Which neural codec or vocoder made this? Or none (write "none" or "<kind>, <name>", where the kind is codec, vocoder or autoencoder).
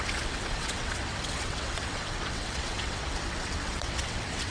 vocoder, WaveNeXt